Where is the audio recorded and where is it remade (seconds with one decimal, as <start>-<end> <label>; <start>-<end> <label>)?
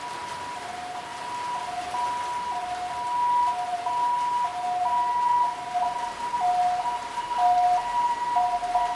0.0-8.9 recorded